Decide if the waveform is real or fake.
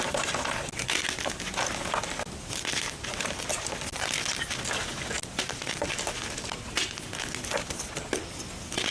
real